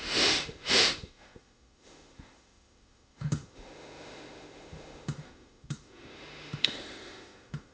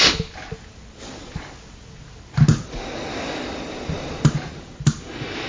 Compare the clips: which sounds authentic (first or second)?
second